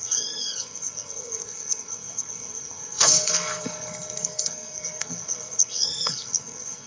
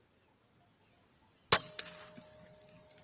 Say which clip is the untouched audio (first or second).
second